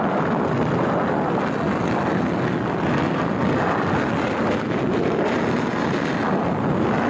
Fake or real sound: real